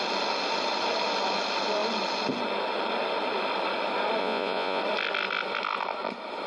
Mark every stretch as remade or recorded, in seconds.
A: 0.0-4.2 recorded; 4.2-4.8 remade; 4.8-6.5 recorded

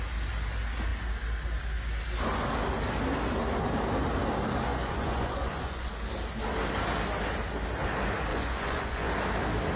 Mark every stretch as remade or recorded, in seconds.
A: 0.0-4.7 recorded; 4.7-5.9 remade; 5.9-8.3 recorded; 8.3-9.1 remade; 9.1-9.8 recorded

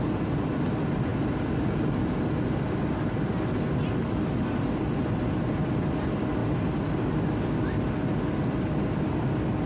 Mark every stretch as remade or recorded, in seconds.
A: 0.0-9.7 recorded

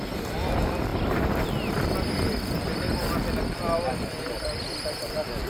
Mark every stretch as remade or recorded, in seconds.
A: 0.0-5.5 recorded

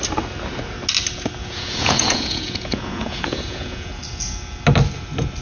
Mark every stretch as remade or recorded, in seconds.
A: 0.0-1.4 recorded; 1.4-3.9 remade; 3.9-5.4 recorded